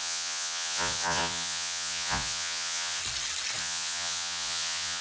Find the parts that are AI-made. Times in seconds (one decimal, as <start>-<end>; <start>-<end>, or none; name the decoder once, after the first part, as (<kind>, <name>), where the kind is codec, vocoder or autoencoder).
0.0-3.0 (vocoder, Vocos); 3.6-5.0